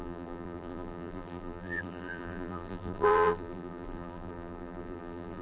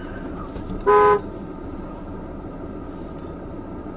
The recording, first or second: second